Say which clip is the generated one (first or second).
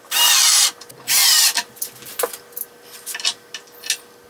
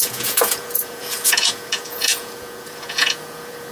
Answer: second